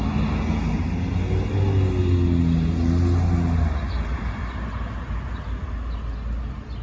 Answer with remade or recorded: recorded